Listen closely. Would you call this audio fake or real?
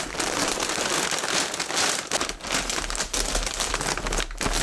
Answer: real